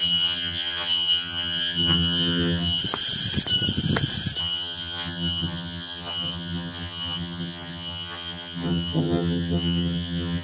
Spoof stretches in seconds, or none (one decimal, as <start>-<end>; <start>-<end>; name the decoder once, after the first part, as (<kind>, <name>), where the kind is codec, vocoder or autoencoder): 0.0-2.8 (vocoder, HiFi-GAN); 4.4-10.4